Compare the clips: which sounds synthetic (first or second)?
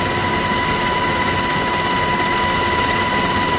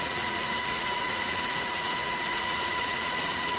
second